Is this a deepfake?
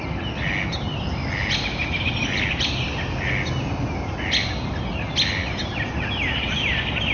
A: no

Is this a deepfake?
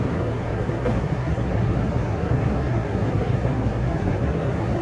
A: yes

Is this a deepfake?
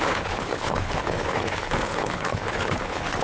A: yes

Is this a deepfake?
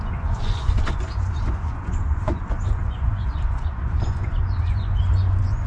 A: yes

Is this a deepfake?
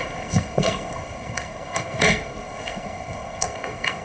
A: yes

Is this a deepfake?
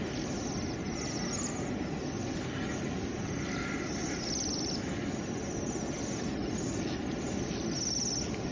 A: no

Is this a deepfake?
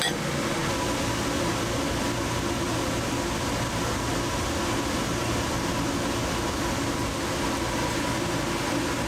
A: no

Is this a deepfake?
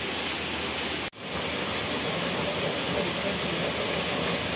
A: no